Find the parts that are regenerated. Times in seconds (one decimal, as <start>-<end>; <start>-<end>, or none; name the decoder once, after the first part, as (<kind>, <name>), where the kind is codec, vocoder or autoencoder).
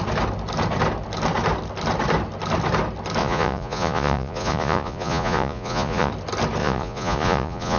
3.2-6.1 (vocoder, Vocos); 6.6-7.8